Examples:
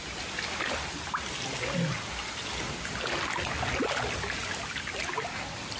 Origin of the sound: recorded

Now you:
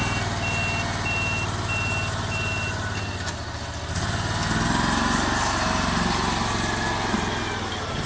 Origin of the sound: recorded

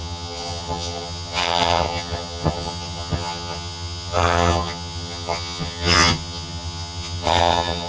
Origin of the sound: remade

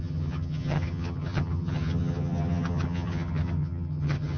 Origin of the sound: remade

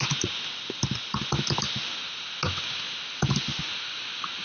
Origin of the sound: recorded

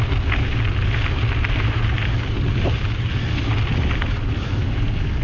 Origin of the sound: recorded